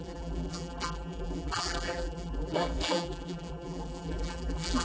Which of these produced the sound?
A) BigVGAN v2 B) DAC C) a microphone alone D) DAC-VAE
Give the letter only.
A